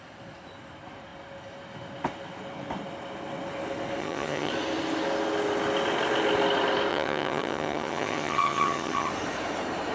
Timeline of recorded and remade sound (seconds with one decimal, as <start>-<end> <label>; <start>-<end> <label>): 0.0-4.0 recorded; 4.0-4.5 remade; 4.5-6.9 recorded; 6.9-9.1 remade; 9.1-9.9 recorded